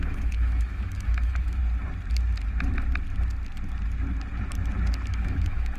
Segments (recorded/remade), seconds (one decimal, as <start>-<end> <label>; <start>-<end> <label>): 0.0-1.6 remade; 1.6-5.1 recorded; 5.1-5.8 remade